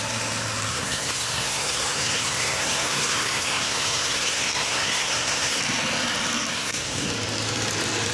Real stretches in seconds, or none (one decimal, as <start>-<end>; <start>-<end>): 0.0-0.7; 5.6-6.5; 7.1-8.1